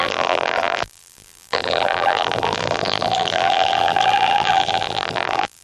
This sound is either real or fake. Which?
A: fake